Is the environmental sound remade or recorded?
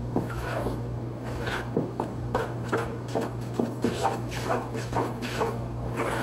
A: remade